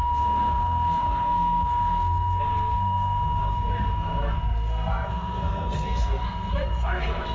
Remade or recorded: remade